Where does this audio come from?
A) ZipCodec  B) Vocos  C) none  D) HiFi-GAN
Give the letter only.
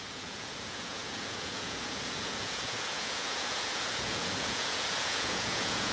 B